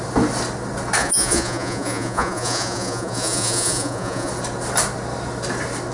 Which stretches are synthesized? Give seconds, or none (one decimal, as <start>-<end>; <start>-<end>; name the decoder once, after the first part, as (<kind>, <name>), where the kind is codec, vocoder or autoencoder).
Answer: 1.0-4.3 (vocoder, Vocos)